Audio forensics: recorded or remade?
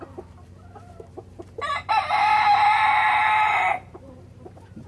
remade